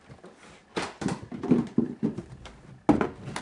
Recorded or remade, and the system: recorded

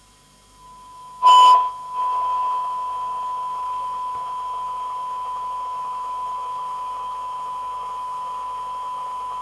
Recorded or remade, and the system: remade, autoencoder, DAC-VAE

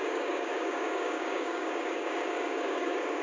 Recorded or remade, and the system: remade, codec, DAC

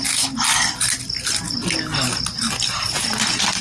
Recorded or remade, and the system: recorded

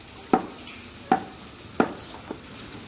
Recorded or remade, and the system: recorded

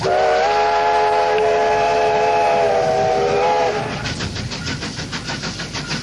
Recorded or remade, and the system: recorded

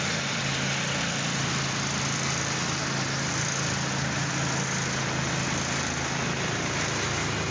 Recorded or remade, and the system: recorded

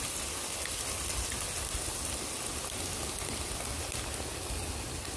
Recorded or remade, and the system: recorded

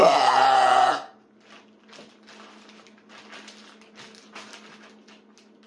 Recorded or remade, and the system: recorded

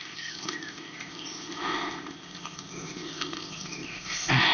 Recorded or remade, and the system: remade, codec, ZipCodec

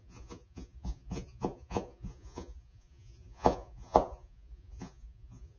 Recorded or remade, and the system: remade, vocoder, Vocos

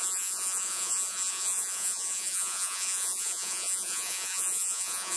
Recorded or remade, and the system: remade, vocoder, Vocos